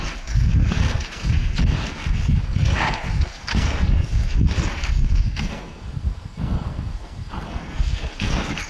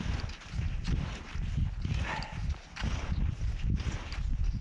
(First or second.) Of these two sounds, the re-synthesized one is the first